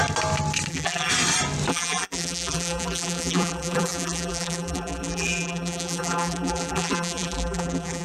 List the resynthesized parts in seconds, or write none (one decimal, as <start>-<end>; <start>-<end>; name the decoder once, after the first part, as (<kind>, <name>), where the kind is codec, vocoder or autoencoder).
0.7-1.1 (vocoder, BigVGAN v2); 1.7-8.0